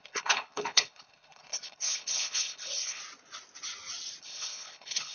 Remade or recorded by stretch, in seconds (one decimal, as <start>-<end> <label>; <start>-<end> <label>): 0.0-3.0 remade; 3.0-4.2 recorded; 4.2-5.1 remade